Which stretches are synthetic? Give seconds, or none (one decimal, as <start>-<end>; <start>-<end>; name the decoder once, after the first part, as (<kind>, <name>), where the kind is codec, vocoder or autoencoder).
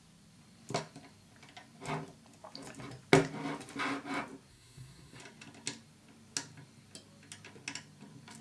4.5-5.2 (codec, SNAC)